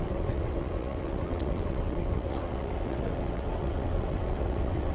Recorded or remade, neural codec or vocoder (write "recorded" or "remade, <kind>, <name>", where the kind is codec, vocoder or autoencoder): remade, vocoder, WaveNeXt